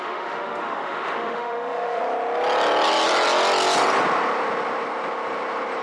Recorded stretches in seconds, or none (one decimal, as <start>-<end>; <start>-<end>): 2.0-5.8